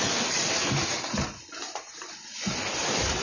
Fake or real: fake